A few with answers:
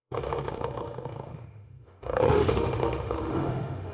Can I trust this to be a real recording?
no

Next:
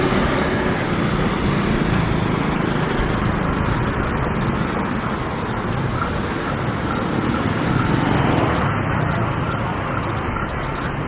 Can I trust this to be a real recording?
yes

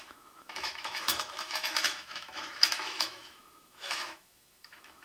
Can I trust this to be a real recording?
no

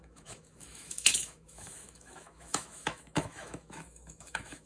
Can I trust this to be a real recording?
no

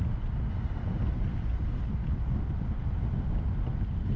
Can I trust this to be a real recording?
yes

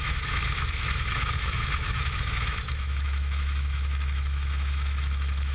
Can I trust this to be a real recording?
no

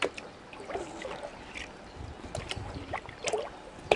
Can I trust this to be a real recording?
yes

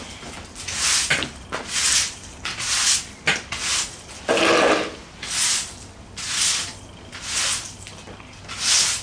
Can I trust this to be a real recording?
yes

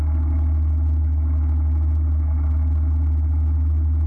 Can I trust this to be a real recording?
yes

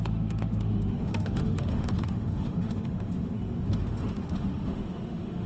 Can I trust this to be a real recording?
no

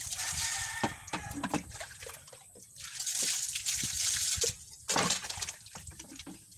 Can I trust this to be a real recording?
yes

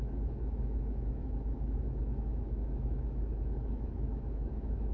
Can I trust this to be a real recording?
no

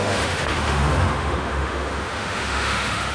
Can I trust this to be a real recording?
no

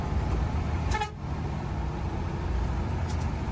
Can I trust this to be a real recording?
yes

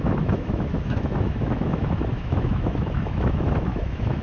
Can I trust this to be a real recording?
no